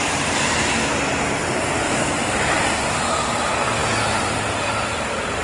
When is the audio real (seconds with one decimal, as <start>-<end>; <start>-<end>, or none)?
0.0-1.8; 2.6-5.4